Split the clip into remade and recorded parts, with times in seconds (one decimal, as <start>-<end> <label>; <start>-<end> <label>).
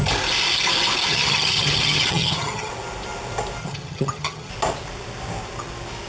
0.0-1.1 recorded; 1.1-2.7 remade; 2.7-3.6 recorded; 3.6-4.5 remade; 4.5-6.1 recorded